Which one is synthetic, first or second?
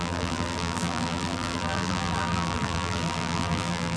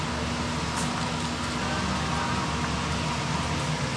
first